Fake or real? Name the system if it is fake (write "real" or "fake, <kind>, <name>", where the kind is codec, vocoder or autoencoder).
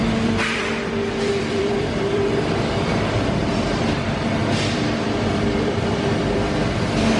fake, vocoder, BigVGAN v2